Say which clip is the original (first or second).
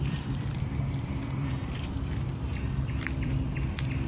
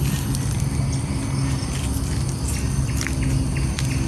second